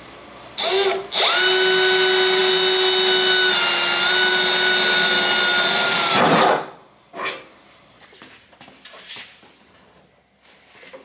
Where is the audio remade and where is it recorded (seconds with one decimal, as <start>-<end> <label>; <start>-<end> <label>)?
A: 0.0-11.0 recorded